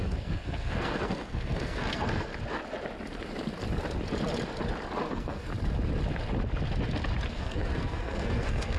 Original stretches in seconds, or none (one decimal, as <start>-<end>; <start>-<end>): 2.3-5.1; 5.5-7.3